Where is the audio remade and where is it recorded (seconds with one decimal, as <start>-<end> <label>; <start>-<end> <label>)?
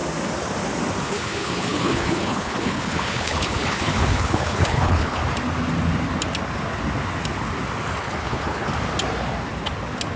0.0-1.0 recorded; 1.0-5.2 remade; 5.2-8.0 recorded; 8.0-8.7 remade; 8.7-10.2 recorded